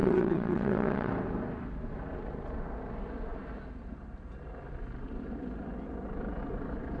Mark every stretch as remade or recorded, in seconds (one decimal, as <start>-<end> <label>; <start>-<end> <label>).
0.0-1.1 remade; 1.1-7.0 recorded